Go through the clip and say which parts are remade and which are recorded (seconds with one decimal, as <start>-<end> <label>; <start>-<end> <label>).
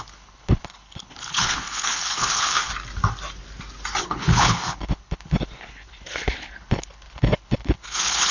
0.0-2.7 remade; 2.7-4.0 recorded; 4.0-8.3 remade